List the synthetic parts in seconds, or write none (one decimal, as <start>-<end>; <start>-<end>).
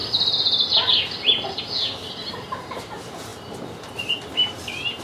none